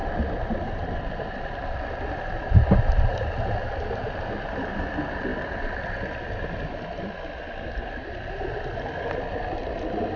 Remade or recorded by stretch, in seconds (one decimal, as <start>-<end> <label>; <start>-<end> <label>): 0.0-5.3 recorded; 5.3-8.3 remade; 8.3-10.2 recorded